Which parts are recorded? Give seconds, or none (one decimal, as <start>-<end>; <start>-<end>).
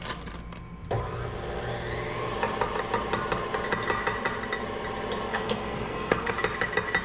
0.0-5.3; 6.3-7.0